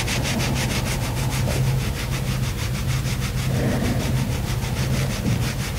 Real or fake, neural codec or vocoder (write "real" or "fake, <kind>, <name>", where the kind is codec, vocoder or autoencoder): real